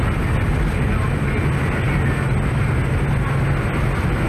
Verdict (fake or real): real